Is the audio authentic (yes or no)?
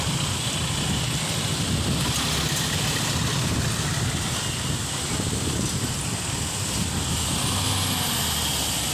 yes